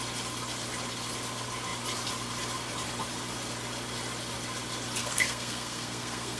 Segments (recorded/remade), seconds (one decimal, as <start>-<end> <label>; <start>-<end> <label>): 0.0-5.0 recorded; 5.0-6.4 remade